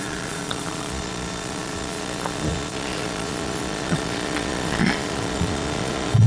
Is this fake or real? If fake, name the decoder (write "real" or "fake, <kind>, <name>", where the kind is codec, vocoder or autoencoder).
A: fake, vocoder, Vocos